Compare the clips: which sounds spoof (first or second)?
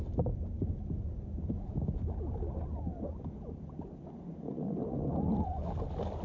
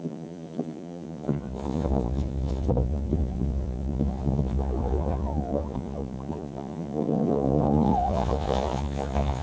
second